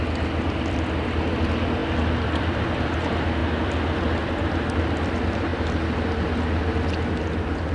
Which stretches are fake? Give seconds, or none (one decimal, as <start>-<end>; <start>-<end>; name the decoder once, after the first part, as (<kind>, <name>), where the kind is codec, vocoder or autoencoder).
1.8-3.0 (vocoder, BigVGAN v2); 3.4-4.3